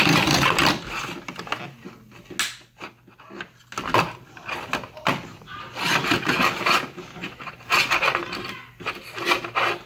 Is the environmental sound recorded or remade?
recorded